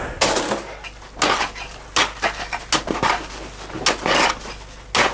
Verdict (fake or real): real